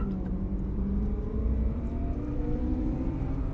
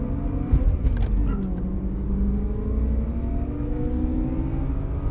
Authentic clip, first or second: second